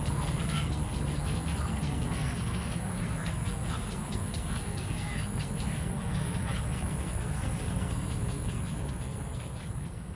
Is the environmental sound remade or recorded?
remade